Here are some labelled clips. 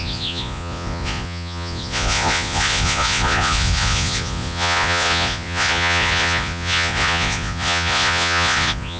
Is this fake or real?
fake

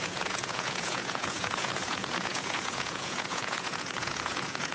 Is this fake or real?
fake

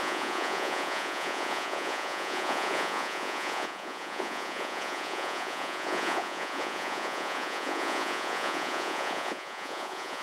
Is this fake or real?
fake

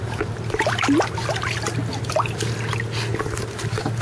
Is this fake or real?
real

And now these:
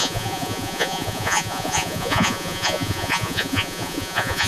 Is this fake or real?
fake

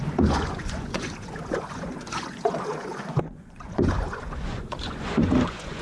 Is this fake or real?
fake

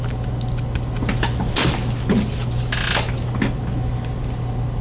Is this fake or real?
real